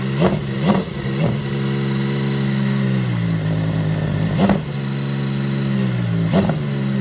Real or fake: real